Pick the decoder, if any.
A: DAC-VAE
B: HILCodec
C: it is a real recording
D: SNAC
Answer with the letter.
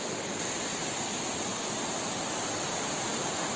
C